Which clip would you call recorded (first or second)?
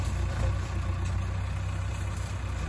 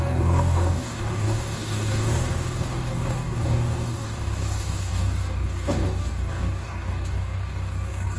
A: first